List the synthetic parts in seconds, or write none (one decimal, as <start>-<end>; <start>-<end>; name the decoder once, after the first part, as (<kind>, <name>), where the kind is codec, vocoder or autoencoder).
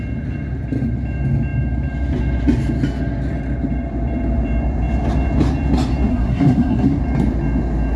6.1-7.0 (codec, SNAC)